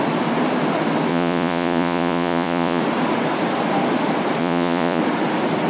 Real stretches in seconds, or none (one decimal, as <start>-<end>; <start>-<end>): 0.0-1.1; 2.8-4.4; 5.0-5.7